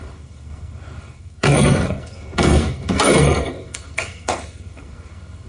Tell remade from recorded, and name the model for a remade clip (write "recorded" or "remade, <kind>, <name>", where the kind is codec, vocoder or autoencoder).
remade, codec, SNAC